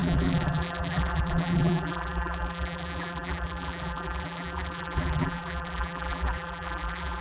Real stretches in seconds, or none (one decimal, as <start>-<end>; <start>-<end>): none